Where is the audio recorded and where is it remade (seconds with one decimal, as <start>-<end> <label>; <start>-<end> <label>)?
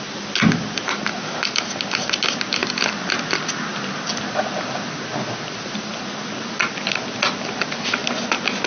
0.0-8.7 recorded